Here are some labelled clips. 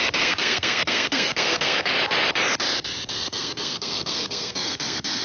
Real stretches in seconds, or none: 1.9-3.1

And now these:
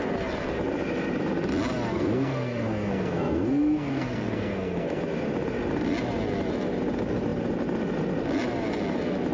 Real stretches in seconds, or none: 0.0-1.9; 5.0-9.3

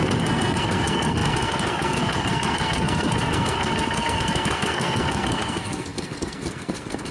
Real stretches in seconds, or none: none

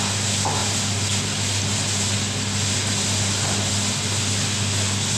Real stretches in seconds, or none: 0.0-5.2

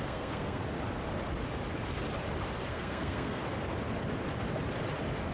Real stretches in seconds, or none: 0.6-2.7; 3.4-5.3

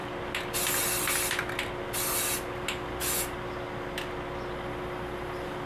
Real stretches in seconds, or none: 0.0-5.7

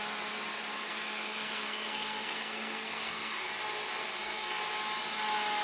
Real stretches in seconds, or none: 0.0-0.7; 3.5-4.0; 4.6-5.6

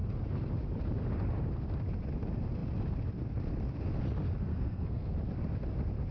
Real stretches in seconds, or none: 0.0-4.5; 5.1-6.1